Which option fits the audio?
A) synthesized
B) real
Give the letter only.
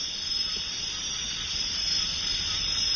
B